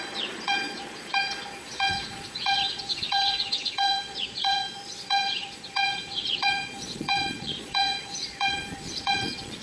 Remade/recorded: remade